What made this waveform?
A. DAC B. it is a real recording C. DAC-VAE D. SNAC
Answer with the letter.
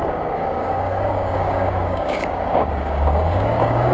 A